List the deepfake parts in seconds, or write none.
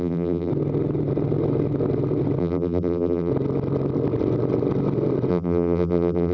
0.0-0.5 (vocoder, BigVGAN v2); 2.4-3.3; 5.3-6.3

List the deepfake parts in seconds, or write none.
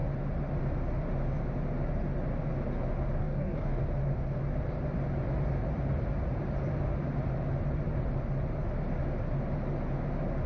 3.2-3.8 (codec, DAC)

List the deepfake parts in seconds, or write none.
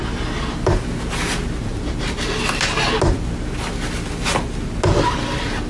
none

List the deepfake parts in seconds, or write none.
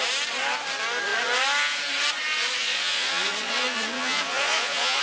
2.6-5.0 (vocoder, Vocos)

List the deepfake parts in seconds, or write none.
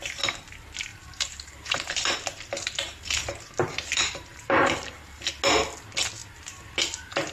0.9-5.3 (vocoder, BigVGAN v2)